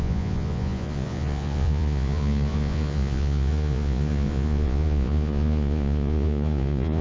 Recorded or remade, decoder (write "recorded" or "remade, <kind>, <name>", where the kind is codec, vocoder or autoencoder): remade, vocoder, Vocos